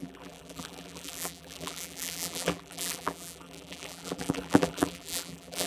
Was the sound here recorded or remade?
remade